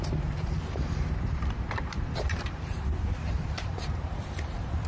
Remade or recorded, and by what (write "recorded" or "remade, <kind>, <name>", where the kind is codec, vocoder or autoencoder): remade, vocoder, BigVGAN v2